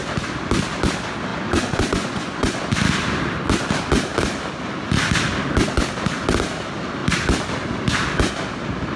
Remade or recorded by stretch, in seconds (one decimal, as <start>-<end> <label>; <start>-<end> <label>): 0.0-1.3 recorded; 1.3-2.6 remade; 2.6-9.0 recorded